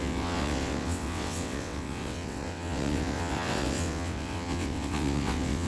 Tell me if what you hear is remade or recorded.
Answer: remade